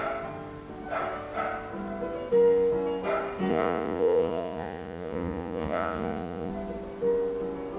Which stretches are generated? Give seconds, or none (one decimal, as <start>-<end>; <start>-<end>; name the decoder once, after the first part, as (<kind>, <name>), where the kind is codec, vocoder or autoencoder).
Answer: 3.5-6.5 (vocoder, Vocos)